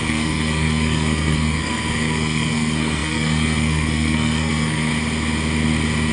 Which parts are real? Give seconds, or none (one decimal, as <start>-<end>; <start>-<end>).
4.9-6.1